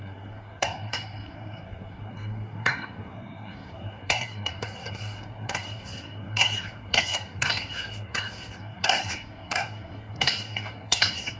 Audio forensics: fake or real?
fake